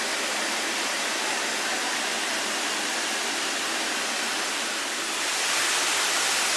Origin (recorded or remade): recorded